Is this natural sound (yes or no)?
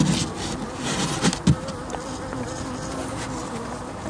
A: yes